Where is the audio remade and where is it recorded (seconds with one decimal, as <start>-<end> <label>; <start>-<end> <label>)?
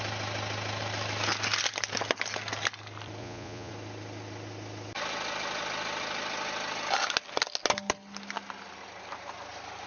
0.0-3.2 recorded; 3.2-3.7 remade; 3.7-9.9 recorded